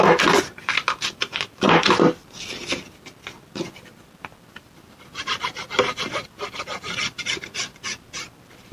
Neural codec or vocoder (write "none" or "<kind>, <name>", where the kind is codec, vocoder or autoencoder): none